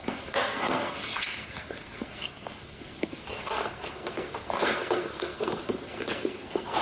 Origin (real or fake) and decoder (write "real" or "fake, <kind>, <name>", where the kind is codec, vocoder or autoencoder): fake, codec, SNAC